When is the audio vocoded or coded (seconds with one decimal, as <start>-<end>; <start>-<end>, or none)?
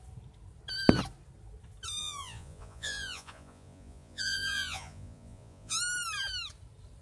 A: 2.0-5.8